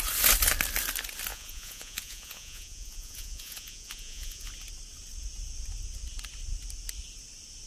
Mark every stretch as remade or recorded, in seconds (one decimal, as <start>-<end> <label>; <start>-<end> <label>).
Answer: 0.0-1.3 recorded; 1.3-4.5 remade; 4.5-7.7 recorded